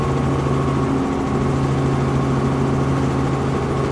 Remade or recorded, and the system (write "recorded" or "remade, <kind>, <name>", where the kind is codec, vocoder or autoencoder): recorded